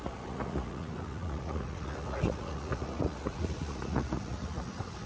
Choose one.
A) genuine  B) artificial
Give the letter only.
B